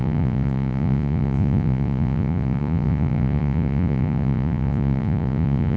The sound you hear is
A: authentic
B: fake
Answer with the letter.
B